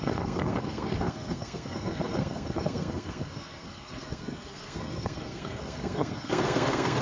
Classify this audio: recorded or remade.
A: remade